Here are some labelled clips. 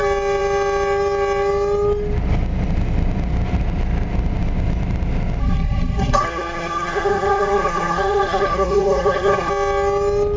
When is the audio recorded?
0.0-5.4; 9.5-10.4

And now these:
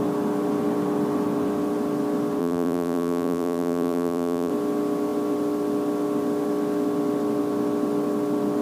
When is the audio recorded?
0.0-2.4; 4.5-8.6